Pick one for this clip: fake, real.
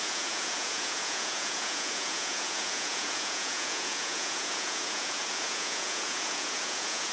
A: fake